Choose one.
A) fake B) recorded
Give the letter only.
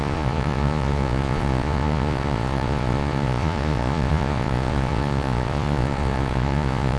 A